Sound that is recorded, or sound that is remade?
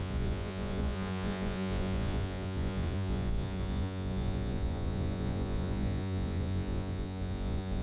remade